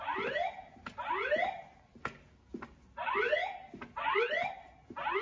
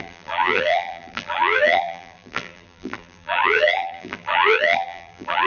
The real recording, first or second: first